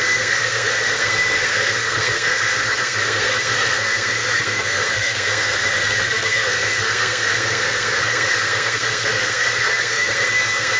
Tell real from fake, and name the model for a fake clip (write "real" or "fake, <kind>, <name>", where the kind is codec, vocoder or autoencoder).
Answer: fake, codec, SNAC